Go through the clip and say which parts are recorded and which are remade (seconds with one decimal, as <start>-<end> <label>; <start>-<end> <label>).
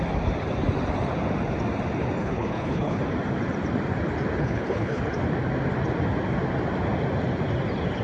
0.0-2.2 recorded; 2.2-3.0 remade; 3.0-4.4 recorded; 4.4-5.0 remade; 5.0-8.0 recorded